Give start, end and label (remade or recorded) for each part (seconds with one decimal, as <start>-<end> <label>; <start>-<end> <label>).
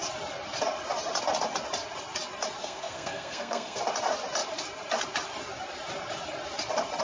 0.0-2.6 recorded; 2.6-3.8 remade; 3.8-7.0 recorded